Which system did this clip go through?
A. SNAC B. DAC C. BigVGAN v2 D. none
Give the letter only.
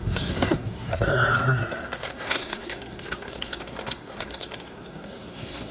A